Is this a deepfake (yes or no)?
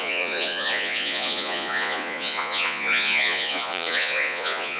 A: yes